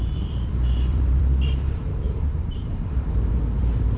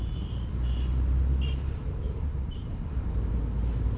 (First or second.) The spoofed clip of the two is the first